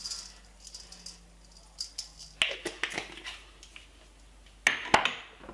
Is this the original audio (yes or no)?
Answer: yes